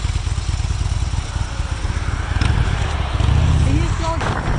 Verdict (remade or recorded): recorded